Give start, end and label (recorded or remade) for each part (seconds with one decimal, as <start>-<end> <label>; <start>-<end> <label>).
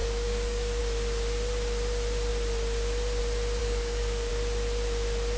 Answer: 0.0-0.8 remade; 0.8-3.6 recorded; 3.6-4.3 remade; 4.3-5.4 recorded